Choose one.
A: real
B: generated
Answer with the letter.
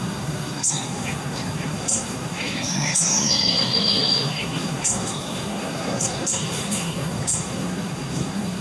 B